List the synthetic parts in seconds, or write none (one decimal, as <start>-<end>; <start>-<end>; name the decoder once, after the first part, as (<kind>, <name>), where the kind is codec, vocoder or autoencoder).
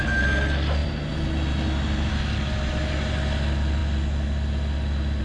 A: none